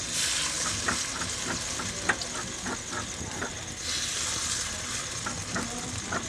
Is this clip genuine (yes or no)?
yes